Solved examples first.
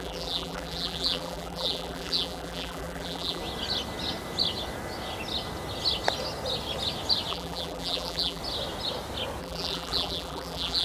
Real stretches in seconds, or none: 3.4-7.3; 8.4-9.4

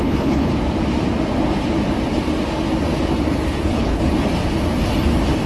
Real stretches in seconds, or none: 0.5-3.6; 4.0-5.5

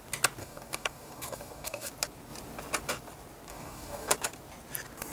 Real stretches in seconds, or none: 0.0-0.4; 1.9-3.5; 4.1-5.1

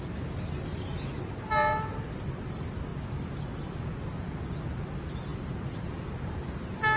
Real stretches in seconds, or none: 0.0-7.0

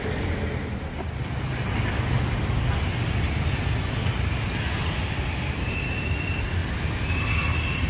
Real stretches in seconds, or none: 0.0-7.9